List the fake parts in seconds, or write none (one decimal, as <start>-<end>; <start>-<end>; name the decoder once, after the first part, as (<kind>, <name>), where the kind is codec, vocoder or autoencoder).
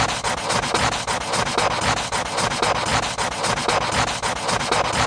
none